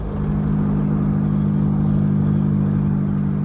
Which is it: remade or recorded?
recorded